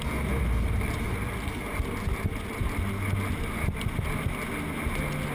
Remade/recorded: recorded